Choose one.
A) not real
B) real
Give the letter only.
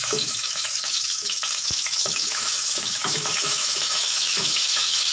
A